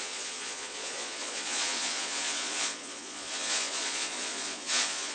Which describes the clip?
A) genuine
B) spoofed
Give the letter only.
B